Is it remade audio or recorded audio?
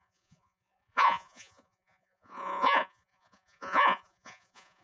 remade